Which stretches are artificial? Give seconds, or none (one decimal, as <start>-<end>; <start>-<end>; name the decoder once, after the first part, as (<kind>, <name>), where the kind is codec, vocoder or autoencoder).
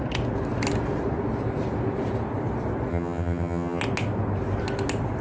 2.9-3.8 (vocoder, HiFi-GAN)